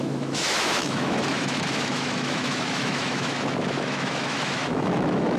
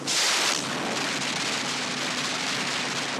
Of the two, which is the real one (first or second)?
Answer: second